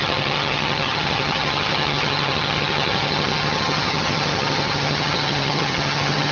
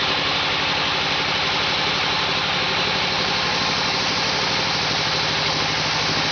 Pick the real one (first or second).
second